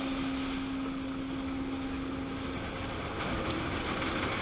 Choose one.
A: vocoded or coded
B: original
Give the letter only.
B